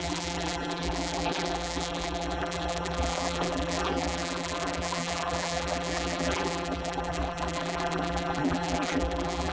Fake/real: fake